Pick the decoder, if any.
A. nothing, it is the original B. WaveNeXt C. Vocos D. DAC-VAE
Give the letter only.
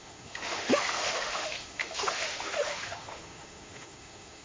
D